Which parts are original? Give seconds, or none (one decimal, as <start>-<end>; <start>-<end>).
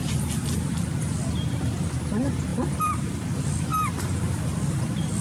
0.0-2.5; 3.3-3.7; 4.7-5.2